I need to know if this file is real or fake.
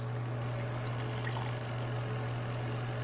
real